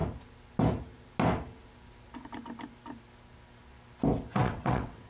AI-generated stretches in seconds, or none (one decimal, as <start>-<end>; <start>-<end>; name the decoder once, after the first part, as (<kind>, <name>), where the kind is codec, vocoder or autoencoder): 4.3-5.1 (vocoder, WaveNeXt)

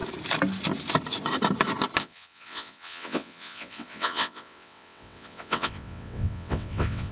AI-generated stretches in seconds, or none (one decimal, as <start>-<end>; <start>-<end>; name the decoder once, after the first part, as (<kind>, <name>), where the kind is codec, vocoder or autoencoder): 2.0-7.1 (vocoder, WaveNeXt)